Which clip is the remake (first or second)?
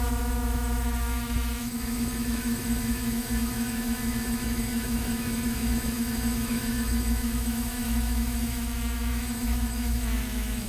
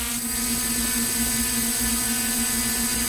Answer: first